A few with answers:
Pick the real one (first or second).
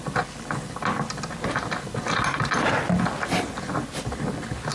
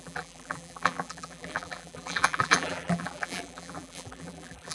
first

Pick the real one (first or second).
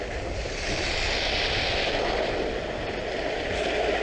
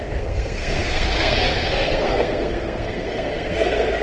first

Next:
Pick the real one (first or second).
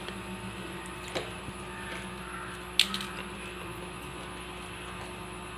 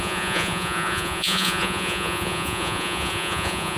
first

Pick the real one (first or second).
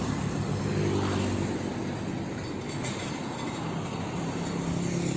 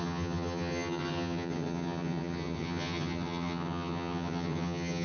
first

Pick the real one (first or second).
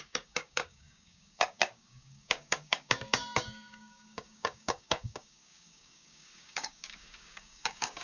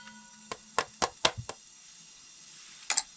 second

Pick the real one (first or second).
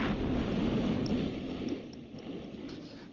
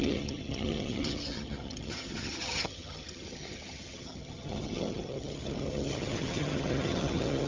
first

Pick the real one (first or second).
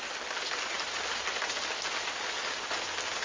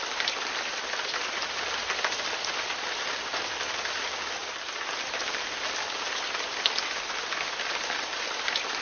first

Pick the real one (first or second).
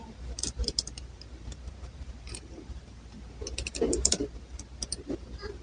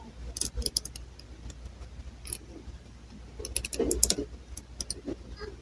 second